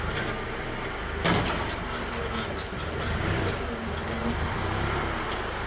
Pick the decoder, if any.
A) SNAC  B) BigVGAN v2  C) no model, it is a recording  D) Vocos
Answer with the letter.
C